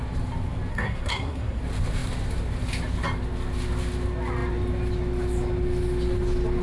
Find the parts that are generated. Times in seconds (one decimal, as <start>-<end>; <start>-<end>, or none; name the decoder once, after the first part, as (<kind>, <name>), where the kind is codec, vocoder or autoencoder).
0.7-1.6 (codec, SNAC)